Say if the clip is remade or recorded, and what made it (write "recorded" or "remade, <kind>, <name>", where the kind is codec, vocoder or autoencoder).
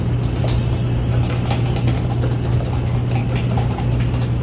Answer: recorded